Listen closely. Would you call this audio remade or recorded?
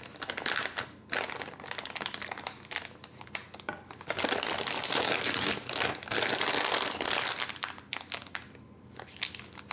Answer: recorded